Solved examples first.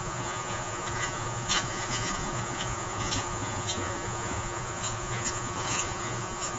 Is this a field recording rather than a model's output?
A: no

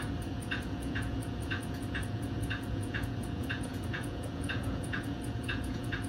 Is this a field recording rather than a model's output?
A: no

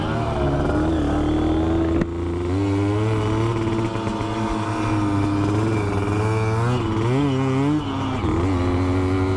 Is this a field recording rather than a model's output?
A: yes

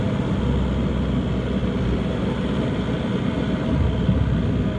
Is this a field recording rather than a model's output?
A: yes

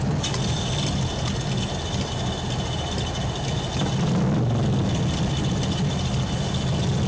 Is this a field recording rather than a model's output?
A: yes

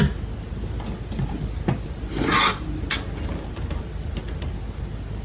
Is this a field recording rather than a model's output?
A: yes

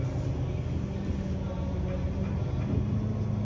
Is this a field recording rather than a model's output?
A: yes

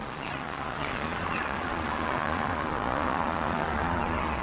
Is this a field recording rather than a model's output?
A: no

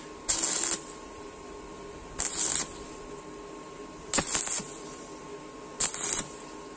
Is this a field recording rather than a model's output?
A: yes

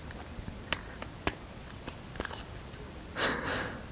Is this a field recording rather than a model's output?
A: yes